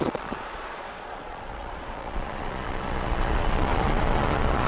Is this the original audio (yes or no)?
no